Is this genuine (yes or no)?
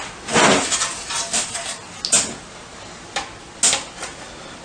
yes